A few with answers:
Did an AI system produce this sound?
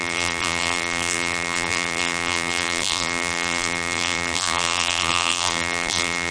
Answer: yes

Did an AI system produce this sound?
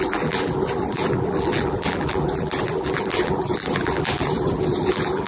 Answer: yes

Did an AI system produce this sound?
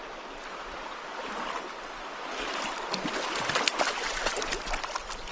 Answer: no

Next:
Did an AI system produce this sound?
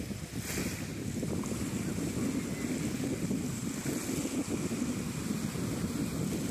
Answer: no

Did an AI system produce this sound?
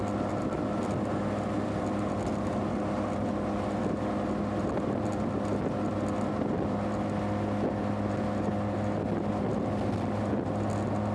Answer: no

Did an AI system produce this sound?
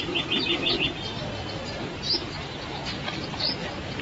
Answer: no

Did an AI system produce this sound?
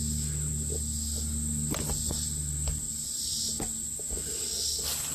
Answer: no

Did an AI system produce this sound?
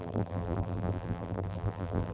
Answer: yes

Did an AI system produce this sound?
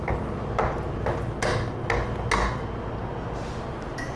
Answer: no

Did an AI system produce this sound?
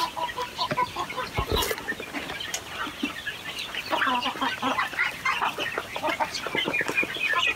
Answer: no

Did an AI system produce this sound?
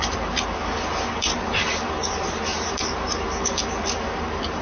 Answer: yes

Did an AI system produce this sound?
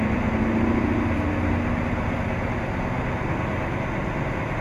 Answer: no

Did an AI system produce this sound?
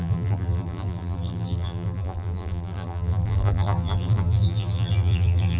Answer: yes